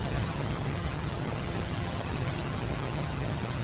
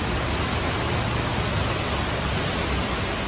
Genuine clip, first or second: second